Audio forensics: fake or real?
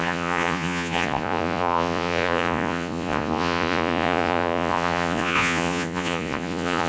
fake